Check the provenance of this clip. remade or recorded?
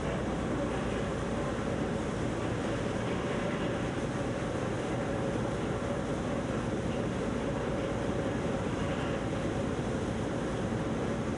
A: remade